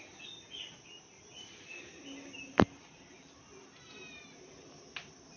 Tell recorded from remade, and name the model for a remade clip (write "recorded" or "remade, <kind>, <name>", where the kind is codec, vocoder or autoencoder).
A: recorded